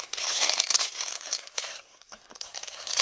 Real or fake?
fake